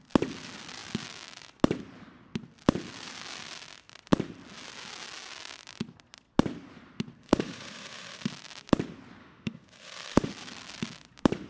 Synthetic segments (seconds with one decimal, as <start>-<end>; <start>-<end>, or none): 7.2-8.3; 9.2-10.3